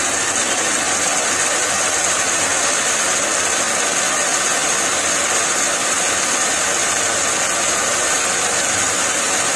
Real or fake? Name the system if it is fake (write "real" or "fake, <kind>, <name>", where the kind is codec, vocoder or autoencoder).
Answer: real